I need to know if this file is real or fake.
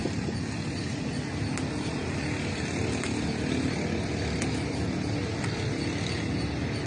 real